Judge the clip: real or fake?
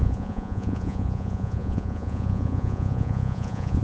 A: fake